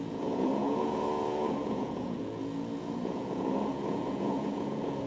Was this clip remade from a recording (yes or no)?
yes